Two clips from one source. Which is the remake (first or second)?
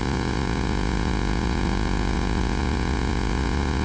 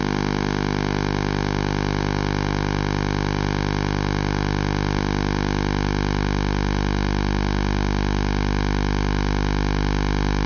first